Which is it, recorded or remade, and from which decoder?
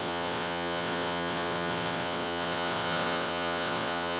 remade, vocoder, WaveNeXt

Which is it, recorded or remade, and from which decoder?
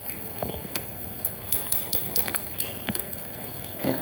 remade, codec, SNAC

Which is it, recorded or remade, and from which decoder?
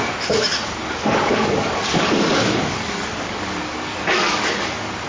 remade, codec, DAC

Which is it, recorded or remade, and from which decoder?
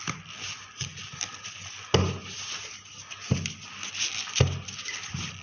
recorded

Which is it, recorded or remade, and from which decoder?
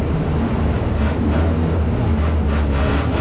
recorded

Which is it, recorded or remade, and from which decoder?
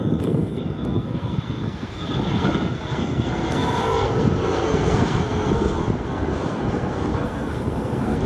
remade, codec, SNAC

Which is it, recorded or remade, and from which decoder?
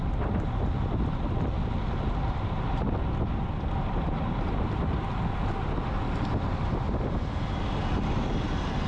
recorded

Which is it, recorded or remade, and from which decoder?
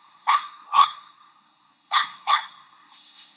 remade, codec, SNAC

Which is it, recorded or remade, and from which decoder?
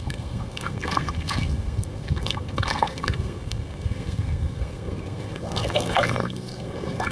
remade, codec, SNAC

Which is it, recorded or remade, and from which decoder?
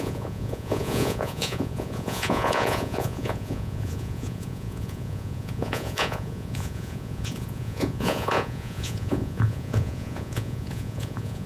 remade, vocoder, Vocos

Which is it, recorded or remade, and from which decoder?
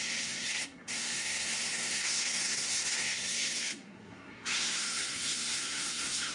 remade, codec, SNAC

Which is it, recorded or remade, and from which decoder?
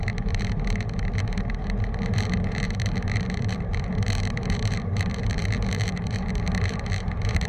remade, vocoder, BigVGAN v2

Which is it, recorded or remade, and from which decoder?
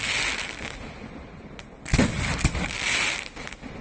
recorded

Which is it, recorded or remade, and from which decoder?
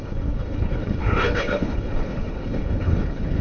remade, codec, HILCodec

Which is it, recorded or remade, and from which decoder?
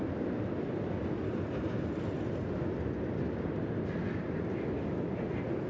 recorded